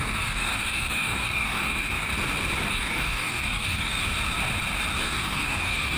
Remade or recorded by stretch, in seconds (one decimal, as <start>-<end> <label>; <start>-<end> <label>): 0.0-2.1 remade; 2.1-2.7 recorded; 2.7-3.9 remade; 3.9-5.0 recorded; 5.0-6.0 remade